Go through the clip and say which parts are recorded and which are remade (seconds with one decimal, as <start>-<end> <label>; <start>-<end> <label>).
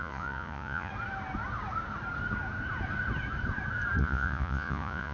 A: 0.0-0.9 remade; 0.9-4.0 recorded; 4.0-5.1 remade